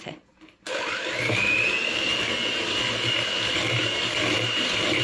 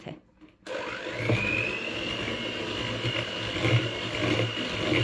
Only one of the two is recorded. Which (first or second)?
second